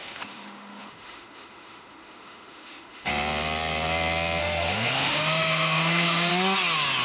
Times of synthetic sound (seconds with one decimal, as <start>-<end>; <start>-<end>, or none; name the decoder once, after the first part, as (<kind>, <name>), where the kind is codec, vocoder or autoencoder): 0.0-3.1 (autoencoder, DAC-VAE); 4.4-6.3